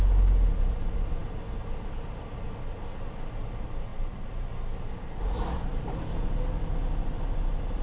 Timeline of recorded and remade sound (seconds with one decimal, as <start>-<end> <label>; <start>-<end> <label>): 0.0-3.9 recorded; 3.9-4.5 remade; 4.5-5.7 recorded; 5.7-6.3 remade; 6.3-7.8 recorded

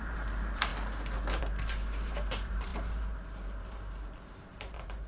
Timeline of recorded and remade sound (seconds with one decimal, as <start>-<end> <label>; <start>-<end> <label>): 0.0-0.7 remade; 0.7-1.4 recorded; 1.4-5.1 remade

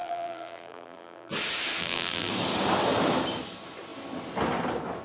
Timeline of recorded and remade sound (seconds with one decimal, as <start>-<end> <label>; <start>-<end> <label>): 0.0-1.3 remade; 1.3-1.8 recorded; 1.8-2.3 remade; 2.3-5.0 recorded

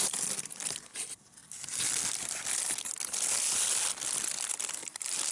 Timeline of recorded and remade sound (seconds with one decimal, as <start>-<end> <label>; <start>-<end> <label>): 0.0-1.4 remade; 1.4-4.5 recorded; 4.5-5.3 remade

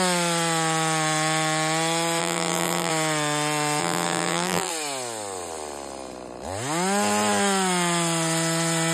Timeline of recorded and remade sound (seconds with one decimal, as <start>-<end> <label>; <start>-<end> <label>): 0.0-2.2 recorded; 2.2-2.9 remade; 2.9-3.8 recorded; 3.8-4.7 remade; 4.7-8.9 recorded

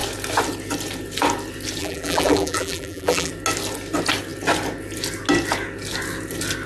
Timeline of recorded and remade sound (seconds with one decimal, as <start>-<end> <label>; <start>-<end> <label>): 0.0-1.8 recorded; 1.8-3.3 remade; 3.3-6.7 recorded

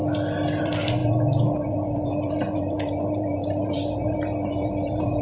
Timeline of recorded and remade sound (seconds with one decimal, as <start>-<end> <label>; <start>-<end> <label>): 0.0-0.6 recorded; 0.6-5.2 remade

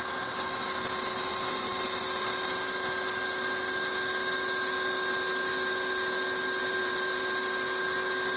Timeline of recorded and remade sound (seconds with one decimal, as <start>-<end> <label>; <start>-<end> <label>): 0.0-6.6 recorded; 6.6-7.2 remade; 7.2-8.4 recorded